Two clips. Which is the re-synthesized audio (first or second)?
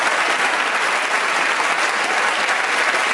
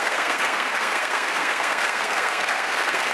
second